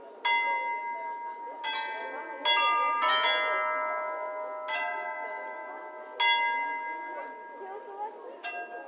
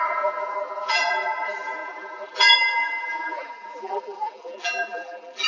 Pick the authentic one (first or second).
first